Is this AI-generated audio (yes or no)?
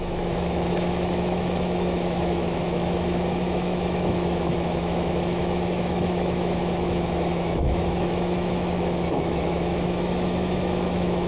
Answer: yes